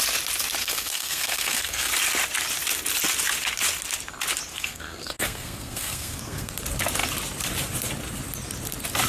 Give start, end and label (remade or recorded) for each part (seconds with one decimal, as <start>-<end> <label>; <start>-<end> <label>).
0.0-0.6 recorded; 0.6-1.9 remade; 1.9-4.5 recorded; 4.5-6.5 remade; 6.5-9.1 recorded